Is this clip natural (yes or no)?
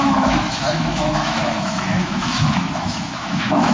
no